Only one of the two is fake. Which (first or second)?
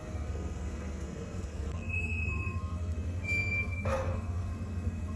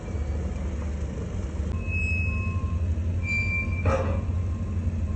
first